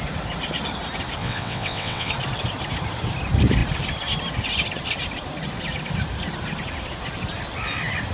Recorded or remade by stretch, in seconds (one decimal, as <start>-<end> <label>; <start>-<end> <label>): 0.0-1.2 recorded; 1.2-2.1 remade; 2.1-8.1 recorded